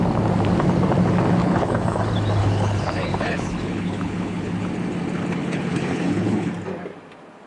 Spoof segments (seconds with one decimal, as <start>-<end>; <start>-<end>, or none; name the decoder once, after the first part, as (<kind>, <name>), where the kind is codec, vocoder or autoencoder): 1.4-2.0 (codec, HILCodec); 2.4-4.7; 5.4-6.5